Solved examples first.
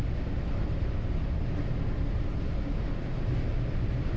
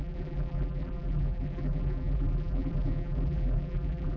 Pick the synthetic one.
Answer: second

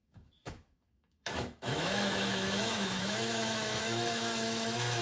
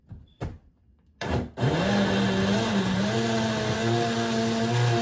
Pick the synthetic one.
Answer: first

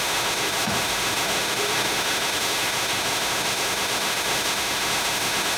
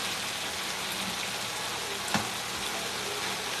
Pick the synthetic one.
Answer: first